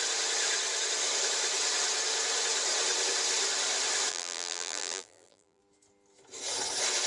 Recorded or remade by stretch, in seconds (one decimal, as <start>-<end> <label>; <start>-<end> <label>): 0.0-4.1 recorded; 4.1-5.6 remade; 5.6-7.1 recorded